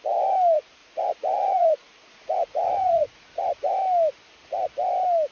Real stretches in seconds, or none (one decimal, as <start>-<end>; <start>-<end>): 0.0-0.8; 3.7-5.3